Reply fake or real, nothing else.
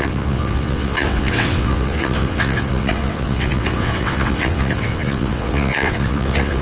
fake